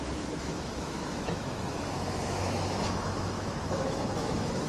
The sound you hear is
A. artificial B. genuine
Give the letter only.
A